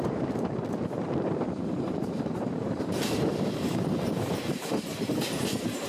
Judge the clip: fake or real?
fake